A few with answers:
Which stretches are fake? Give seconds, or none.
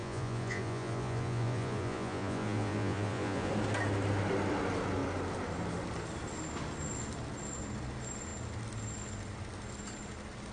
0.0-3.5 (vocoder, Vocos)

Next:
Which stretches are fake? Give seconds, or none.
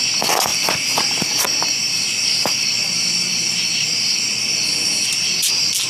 0.5-2.7 (vocoder, BigVGAN v2)